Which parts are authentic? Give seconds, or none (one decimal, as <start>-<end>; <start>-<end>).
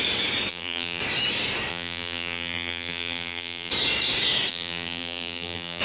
0.0-0.5; 1.0-1.7; 3.7-4.5